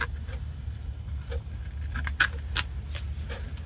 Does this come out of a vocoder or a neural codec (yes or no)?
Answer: no